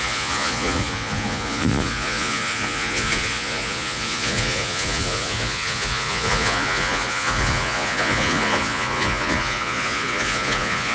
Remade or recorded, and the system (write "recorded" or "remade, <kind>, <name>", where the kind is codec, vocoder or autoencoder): remade, vocoder, Vocos